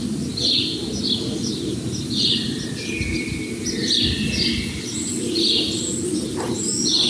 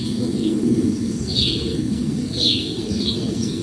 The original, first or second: first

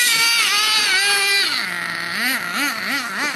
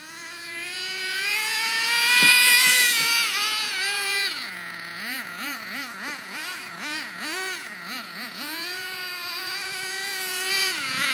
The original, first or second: first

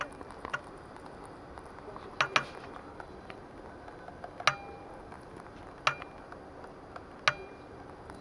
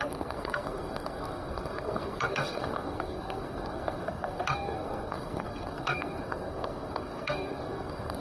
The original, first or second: first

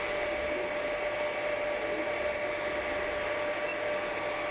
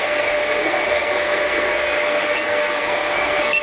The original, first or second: first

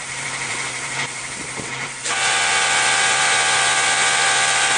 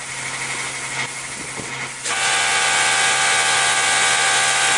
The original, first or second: second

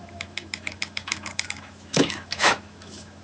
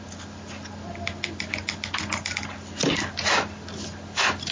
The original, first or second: second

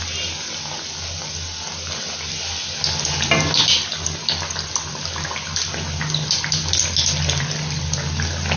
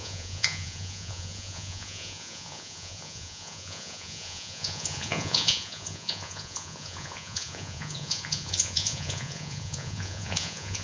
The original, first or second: first